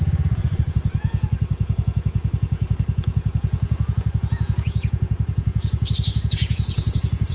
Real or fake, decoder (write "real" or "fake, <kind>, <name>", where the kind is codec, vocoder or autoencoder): fake, vocoder, Vocos